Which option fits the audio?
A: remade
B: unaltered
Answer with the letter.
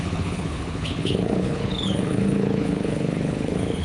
A